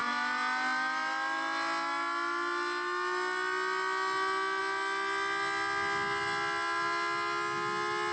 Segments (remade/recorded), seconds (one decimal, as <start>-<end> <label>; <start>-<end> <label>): 0.0-8.1 recorded